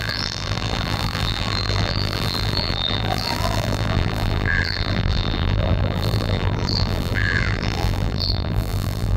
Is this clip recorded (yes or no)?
no